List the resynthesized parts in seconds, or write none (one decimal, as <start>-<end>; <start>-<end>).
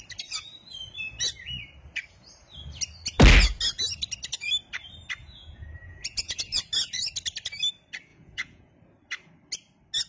5.2-6.6; 8.1-8.7